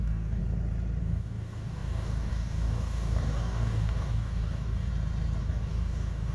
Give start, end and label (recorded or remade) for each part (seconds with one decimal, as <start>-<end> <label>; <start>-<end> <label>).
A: 0.0-0.4 remade; 0.4-1.0 recorded; 1.0-4.9 remade; 4.9-5.4 recorded; 5.4-6.3 remade

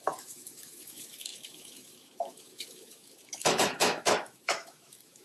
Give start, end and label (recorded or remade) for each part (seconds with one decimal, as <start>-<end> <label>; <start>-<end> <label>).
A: 0.0-5.2 remade

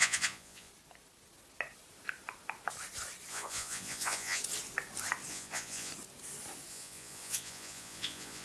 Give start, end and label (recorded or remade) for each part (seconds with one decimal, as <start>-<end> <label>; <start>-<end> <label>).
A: 0.0-0.7 remade; 0.7-3.3 recorded; 3.3-4.4 remade; 4.4-5.3 recorded; 5.3-5.9 remade; 5.9-6.7 recorded; 6.7-8.4 remade

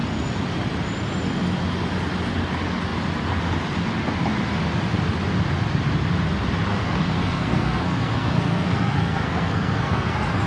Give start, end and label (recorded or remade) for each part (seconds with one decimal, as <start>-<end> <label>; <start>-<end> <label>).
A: 0.0-6.7 recorded; 6.7-10.5 remade

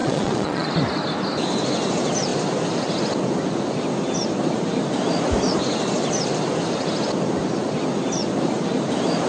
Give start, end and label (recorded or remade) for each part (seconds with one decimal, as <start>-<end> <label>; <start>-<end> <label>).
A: 0.0-0.7 remade; 0.7-9.3 recorded